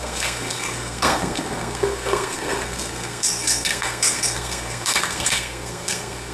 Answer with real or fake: fake